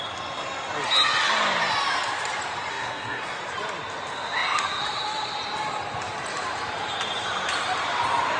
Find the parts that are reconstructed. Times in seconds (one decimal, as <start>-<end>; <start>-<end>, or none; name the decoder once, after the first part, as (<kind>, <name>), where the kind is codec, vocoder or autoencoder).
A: 2.7-3.4 (codec, SNAC)